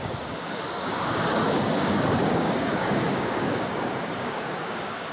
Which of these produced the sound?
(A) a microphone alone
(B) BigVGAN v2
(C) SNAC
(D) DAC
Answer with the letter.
D